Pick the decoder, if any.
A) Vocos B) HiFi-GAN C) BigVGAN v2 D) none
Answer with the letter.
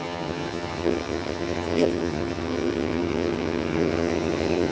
B